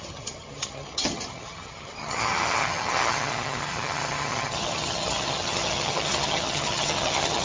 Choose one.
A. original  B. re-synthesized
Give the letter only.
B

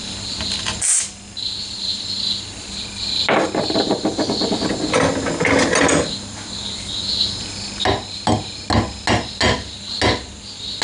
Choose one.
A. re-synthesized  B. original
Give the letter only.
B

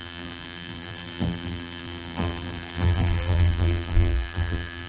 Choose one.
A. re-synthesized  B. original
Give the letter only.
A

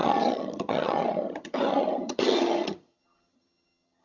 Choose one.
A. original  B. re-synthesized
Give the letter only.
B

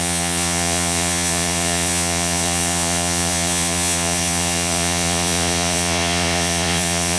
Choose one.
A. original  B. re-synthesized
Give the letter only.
B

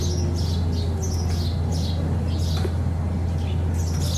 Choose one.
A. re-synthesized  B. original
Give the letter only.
B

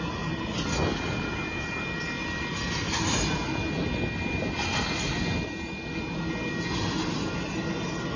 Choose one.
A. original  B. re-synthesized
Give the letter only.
A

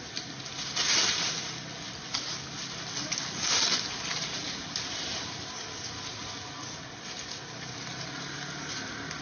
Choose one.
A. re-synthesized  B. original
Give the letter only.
B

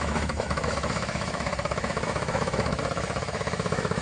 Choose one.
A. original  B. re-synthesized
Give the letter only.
B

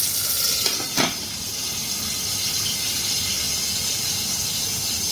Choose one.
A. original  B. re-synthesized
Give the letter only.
A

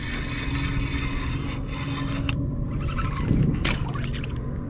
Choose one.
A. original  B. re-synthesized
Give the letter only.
A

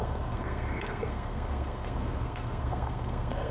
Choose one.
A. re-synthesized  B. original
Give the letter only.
A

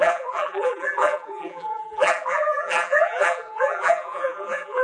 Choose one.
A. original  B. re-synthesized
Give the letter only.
B